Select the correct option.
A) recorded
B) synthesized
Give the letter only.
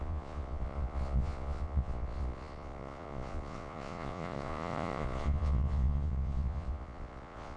B